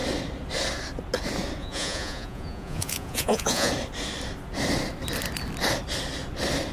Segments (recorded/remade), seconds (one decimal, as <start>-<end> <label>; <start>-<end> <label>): 0.0-1.6 recorded; 1.6-3.7 remade; 3.7-6.7 recorded